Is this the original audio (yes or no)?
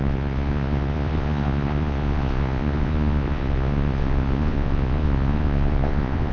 no